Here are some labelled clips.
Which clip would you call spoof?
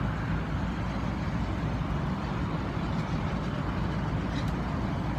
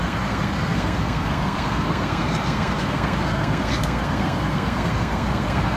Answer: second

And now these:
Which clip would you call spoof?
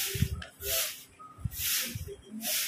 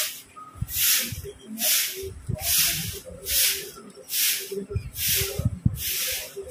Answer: first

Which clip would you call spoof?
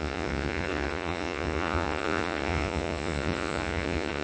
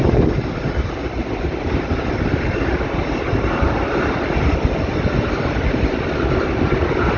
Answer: first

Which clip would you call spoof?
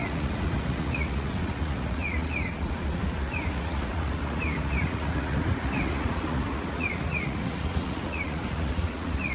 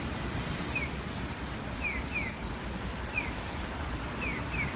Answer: first